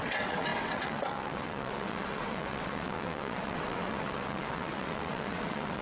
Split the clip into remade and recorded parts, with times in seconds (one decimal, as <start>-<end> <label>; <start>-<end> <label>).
0.0-5.8 remade